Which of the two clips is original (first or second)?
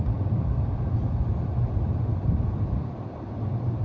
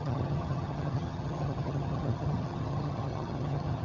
first